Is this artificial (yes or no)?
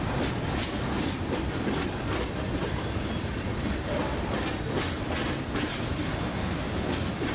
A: no